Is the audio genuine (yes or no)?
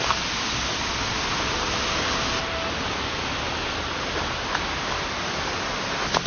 yes